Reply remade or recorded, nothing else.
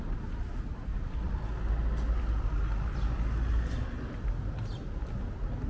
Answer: recorded